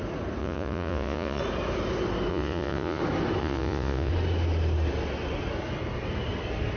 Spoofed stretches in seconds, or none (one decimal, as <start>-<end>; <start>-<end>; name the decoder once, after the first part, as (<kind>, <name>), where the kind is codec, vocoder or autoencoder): 0.4-1.4 (vocoder, Vocos); 2.3-3.0; 3.4-4.1